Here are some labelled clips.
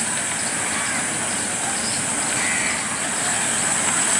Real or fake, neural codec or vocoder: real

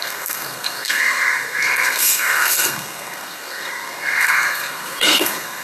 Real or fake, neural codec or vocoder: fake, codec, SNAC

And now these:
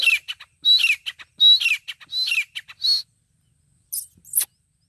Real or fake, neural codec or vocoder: real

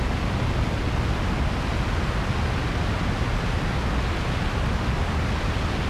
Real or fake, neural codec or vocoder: real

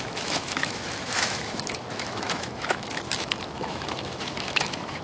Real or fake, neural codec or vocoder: fake, autoencoder, DAC-VAE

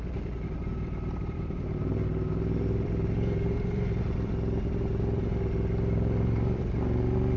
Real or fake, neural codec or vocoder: fake, vocoder, BigVGAN v2